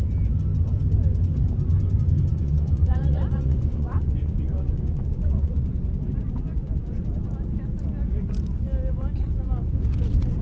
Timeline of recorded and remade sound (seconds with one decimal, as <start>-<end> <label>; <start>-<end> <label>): 0.0-2.3 recorded; 2.3-5.9 remade; 5.9-6.5 recorded; 6.5-7.0 remade; 7.0-10.4 recorded